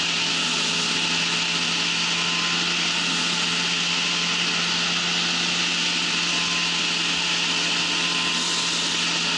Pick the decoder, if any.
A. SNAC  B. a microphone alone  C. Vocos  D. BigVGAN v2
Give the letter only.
B